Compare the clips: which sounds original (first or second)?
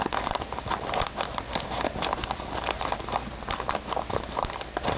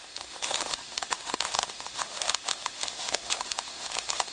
first